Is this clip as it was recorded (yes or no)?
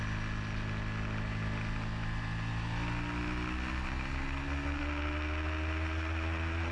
yes